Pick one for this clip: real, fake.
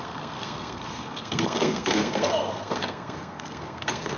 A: fake